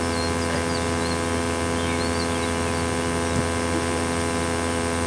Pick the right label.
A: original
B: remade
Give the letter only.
A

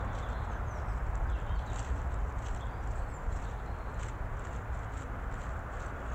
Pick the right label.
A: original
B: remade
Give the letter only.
A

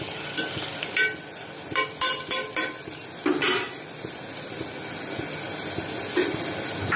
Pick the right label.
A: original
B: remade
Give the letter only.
A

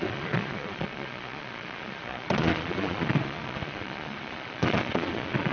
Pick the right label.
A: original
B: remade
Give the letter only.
B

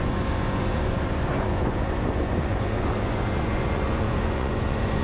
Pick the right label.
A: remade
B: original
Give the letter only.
A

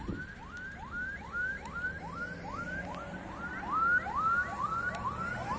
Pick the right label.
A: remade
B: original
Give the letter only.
B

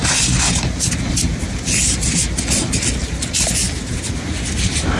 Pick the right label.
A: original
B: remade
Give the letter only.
A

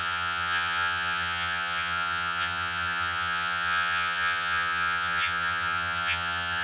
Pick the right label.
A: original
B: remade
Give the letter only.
B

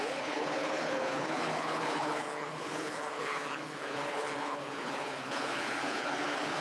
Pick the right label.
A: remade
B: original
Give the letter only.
A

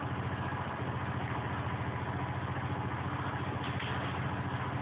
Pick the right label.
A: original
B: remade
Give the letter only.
A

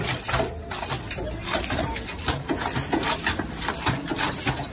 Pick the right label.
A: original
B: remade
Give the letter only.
A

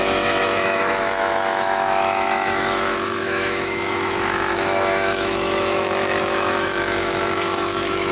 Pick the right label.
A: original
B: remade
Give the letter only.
B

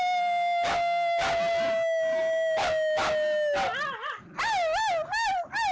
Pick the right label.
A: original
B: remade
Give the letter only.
A